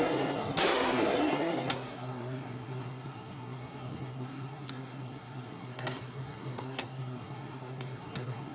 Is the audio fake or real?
fake